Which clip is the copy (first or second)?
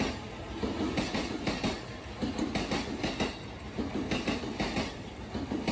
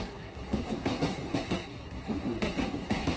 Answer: second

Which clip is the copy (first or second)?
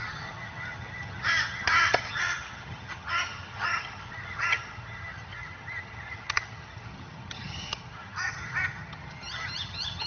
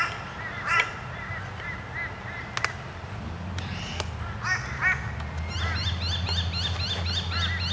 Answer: first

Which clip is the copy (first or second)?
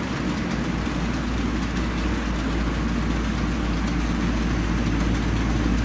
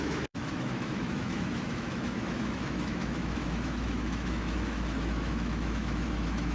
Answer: second